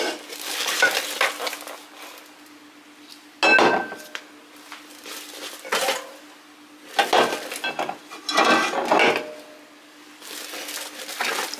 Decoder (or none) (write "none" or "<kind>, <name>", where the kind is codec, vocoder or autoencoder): none